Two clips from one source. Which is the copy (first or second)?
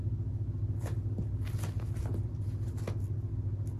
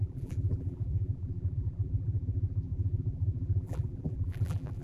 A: second